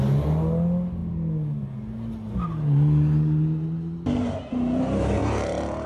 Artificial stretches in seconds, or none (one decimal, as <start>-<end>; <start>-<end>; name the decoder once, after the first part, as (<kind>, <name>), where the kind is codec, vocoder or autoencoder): 5.2-5.9 (vocoder, BigVGAN v2)